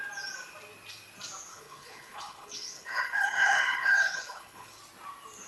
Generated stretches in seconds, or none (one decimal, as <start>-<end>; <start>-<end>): 1.5-4.8